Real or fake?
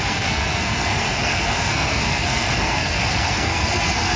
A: fake